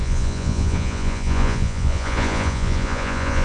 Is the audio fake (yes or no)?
yes